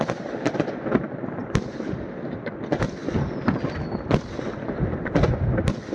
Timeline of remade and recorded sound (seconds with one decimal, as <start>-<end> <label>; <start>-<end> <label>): 0.0-1.4 recorded; 1.4-2.5 remade; 2.5-5.9 recorded